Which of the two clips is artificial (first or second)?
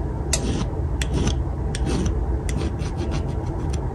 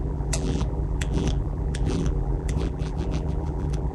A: second